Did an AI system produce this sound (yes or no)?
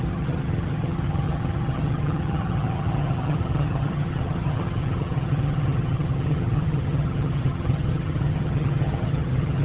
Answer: yes